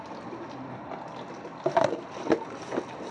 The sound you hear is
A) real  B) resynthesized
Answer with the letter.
A